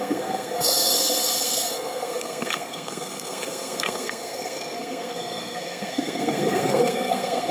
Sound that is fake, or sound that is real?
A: fake